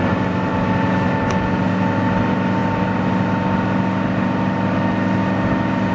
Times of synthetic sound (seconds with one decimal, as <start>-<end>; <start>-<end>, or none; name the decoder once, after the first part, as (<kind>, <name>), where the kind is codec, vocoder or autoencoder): none